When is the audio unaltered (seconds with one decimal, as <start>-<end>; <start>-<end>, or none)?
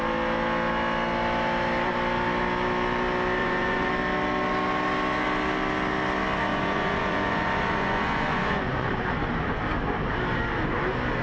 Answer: 0.0-3.4; 3.9-6.5; 8.9-11.2